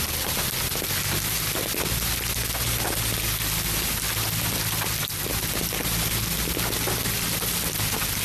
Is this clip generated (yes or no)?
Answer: no